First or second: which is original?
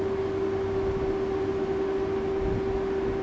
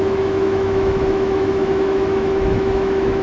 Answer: first